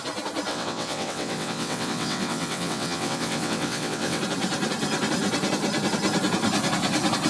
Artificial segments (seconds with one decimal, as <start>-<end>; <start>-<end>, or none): 0.5-4.2